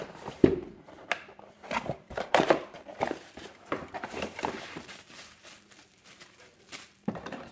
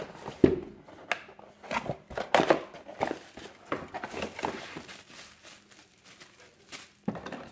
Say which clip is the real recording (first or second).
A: second